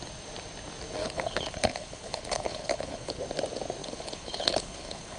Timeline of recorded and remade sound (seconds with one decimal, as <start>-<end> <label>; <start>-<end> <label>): 0.0-1.0 recorded; 1.0-3.2 remade; 3.2-3.8 recorded; 3.8-5.2 remade